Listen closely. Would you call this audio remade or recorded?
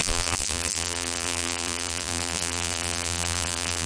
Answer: remade